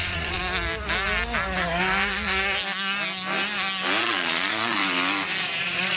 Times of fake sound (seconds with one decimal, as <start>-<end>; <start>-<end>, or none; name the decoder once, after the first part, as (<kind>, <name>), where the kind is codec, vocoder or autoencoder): 0.0-0.4 (vocoder, Vocos); 4.0-4.8; 5.4-6.0